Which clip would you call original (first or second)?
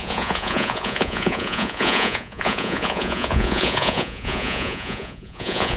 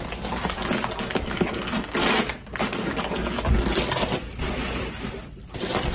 second